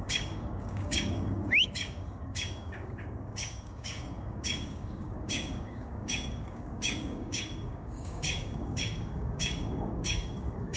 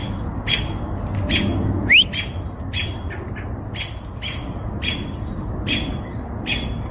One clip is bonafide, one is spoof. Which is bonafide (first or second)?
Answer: second